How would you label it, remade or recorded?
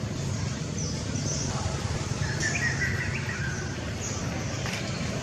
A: remade